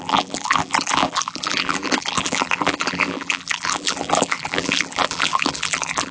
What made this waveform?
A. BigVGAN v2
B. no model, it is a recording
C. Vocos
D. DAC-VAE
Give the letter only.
A